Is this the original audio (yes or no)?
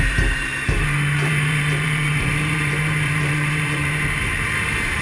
no